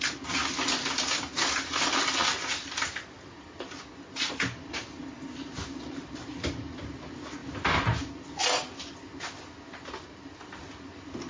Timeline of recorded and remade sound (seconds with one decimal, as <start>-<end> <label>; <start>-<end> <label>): 0.0-11.3 recorded